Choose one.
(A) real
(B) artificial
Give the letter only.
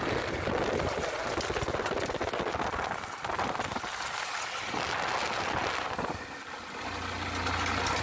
A